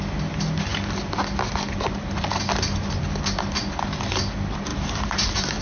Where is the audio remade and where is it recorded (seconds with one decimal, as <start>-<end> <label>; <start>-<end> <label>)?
0.0-4.7 recorded; 4.7-5.6 remade